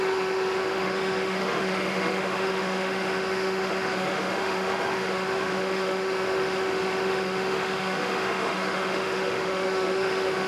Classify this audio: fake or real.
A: fake